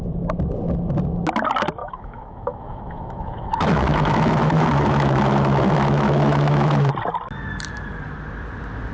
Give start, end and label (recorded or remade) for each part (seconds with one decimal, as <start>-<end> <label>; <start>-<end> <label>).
0.0-1.8 recorded; 1.8-6.9 remade; 6.9-8.9 recorded